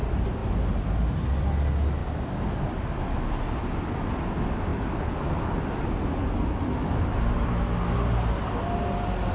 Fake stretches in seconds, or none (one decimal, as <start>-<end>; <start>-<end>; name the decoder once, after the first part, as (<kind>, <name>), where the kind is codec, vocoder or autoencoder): none

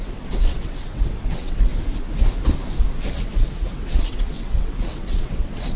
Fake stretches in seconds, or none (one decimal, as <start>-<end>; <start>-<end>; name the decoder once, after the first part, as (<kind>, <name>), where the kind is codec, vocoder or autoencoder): 0.0-1.7 (vocoder, WaveNeXt); 3.1-5.8